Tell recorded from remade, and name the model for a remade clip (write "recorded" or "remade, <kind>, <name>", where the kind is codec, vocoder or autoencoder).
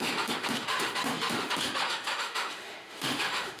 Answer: remade, autoencoder, DAC-VAE